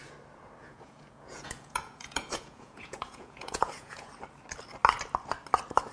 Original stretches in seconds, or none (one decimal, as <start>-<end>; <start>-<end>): 0.0-0.6; 4.1-5.9